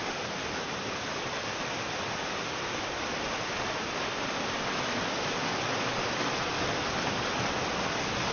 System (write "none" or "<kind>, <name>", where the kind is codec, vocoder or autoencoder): none